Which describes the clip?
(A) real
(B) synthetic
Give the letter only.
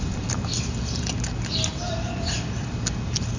A